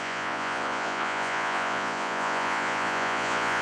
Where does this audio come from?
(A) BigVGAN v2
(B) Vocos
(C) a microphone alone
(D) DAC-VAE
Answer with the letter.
B